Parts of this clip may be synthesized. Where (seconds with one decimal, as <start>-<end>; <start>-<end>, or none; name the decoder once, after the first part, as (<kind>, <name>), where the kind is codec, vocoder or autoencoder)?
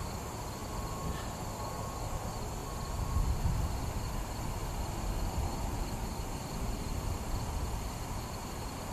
none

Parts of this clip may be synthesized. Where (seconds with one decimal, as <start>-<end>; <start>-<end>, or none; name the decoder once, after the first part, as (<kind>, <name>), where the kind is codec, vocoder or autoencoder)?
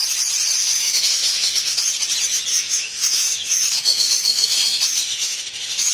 0.6-1.8 (autoencoder, DAC-VAE); 2.5-5.9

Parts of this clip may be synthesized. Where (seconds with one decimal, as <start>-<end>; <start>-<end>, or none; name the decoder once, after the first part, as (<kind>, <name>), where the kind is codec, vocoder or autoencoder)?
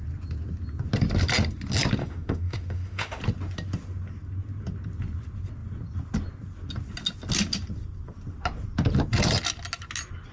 2.0-3.2 (autoencoder, DAC-VAE)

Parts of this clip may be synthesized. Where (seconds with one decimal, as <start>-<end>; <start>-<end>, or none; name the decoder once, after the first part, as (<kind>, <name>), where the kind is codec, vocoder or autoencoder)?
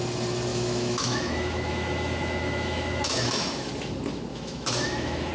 0.5-3.7 (autoencoder, DAC-VAE); 4.3-5.3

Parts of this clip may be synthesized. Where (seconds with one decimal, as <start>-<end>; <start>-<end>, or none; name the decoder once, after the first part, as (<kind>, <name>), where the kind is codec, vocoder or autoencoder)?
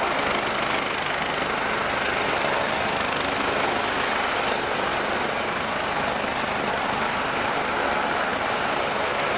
none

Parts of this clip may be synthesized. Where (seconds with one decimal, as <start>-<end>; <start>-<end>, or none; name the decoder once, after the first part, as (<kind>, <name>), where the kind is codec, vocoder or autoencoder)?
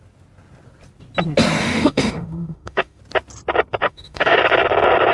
1.6-3.0 (autoencoder, DAC-VAE); 3.8-4.4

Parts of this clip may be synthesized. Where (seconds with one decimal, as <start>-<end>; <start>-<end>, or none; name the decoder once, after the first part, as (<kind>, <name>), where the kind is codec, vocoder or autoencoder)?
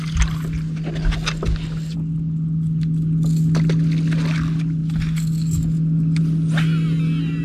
none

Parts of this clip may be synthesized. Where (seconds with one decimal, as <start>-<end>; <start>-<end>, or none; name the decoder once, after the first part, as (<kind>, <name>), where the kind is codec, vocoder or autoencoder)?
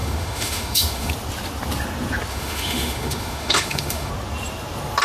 0.0-1.1 (autoencoder, DAC-VAE); 2.3-4.1